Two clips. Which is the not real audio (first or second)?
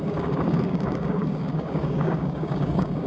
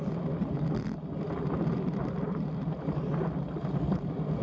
first